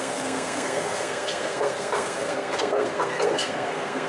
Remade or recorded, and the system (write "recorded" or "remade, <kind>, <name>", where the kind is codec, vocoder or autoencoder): remade, codec, SNAC